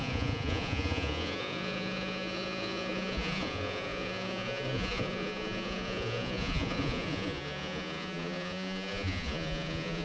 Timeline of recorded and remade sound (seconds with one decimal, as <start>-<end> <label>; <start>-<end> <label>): 0.0-10.0 remade